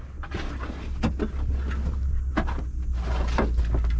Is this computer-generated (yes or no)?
no